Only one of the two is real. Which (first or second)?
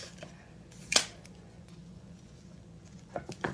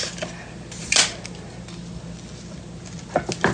second